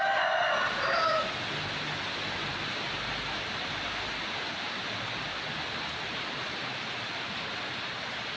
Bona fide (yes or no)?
yes